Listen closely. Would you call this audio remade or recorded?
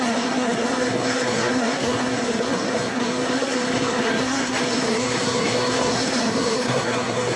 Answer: remade